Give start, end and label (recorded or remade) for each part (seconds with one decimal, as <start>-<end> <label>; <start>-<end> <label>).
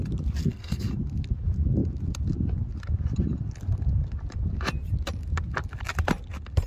0.0-0.4 recorded; 0.4-0.9 remade; 0.9-6.7 recorded